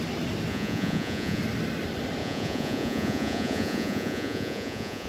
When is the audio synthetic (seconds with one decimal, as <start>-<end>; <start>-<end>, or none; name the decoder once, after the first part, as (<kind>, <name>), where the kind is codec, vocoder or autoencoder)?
0.5-1.4 (vocoder, Vocos); 2.2-5.1